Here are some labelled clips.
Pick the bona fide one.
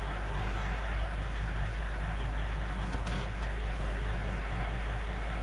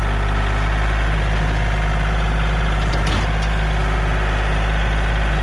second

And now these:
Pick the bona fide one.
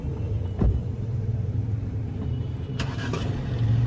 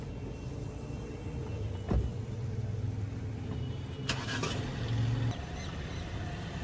second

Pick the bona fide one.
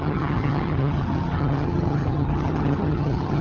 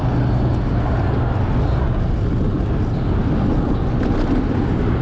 second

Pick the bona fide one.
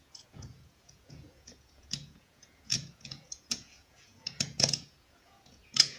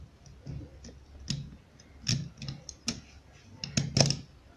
second